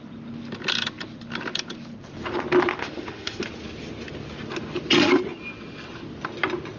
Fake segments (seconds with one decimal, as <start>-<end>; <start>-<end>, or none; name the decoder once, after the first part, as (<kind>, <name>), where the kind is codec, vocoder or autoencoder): 2.7-3.4 (autoencoder, DAC-VAE)